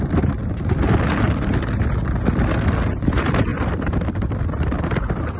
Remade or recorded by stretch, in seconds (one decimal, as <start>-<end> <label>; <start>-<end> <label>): 0.0-3.5 recorded; 3.5-5.4 remade